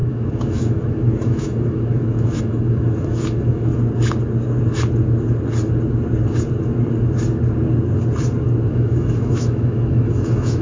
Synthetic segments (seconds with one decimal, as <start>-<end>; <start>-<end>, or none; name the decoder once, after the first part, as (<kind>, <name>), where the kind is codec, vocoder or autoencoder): 0.0-3.7 (autoencoder, DAC-VAE); 8.7-10.6